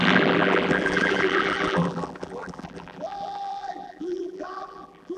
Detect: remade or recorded remade